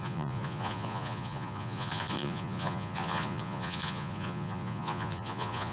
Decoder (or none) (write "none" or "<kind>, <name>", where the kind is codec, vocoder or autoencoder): vocoder, Vocos